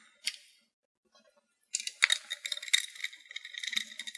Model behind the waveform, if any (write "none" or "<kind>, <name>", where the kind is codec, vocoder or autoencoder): none